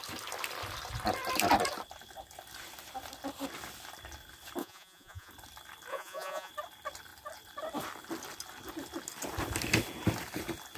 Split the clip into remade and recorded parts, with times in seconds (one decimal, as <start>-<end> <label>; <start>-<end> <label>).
0.0-4.6 recorded; 4.6-5.3 remade; 5.3-5.9 recorded; 5.9-6.5 remade; 6.5-10.8 recorded